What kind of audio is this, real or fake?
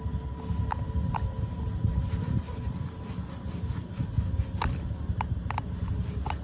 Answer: real